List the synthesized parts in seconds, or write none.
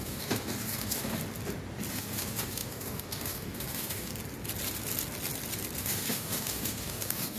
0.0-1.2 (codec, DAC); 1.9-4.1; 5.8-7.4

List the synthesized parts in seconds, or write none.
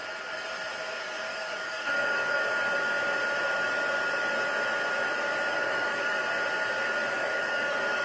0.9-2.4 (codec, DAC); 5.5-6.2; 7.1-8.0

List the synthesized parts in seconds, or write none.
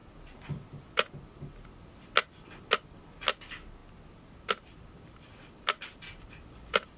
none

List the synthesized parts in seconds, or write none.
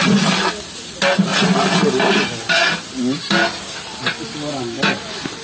none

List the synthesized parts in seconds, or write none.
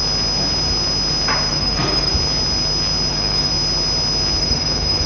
1.5-2.1 (codec, DAC); 3.1-3.5; 4.4-5.1